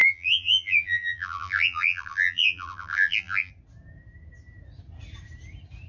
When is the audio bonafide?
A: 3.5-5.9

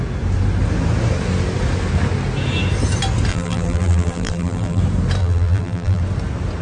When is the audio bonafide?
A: 0.0-3.3; 4.8-5.2; 6.0-6.6

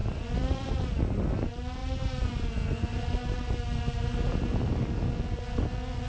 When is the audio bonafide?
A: 0.7-1.8; 2.4-4.3; 5.0-6.1

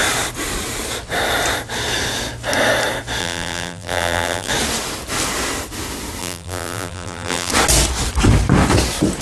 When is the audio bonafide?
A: 0.0-3.2; 4.5-6.2; 7.5-9.2